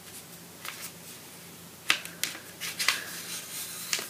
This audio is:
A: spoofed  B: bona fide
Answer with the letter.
B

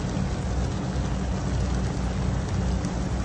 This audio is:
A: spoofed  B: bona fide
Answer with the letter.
B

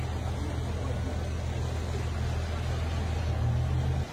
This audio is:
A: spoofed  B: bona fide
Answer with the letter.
B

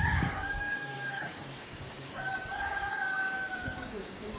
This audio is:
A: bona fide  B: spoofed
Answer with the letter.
B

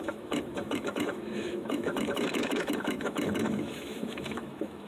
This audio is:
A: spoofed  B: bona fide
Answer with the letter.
A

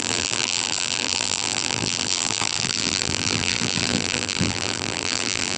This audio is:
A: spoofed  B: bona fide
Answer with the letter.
A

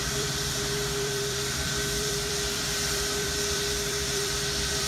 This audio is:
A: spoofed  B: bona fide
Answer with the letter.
A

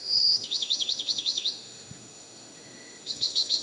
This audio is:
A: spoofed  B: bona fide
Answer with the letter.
A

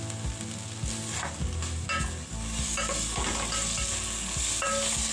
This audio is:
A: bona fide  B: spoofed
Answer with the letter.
A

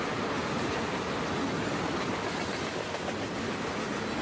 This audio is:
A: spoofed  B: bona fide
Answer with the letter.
B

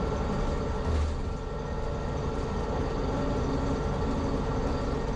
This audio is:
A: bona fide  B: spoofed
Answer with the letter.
A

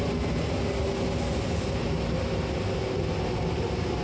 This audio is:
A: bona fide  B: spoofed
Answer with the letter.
A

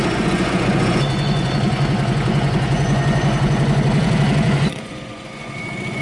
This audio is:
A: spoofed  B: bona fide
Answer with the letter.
A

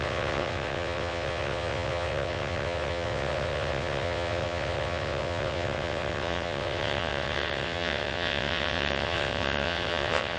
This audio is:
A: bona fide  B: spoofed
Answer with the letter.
B